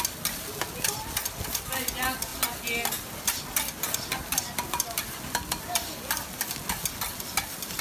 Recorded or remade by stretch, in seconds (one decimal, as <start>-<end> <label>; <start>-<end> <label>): 0.0-7.8 recorded